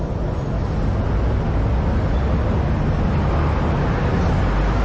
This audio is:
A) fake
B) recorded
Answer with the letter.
B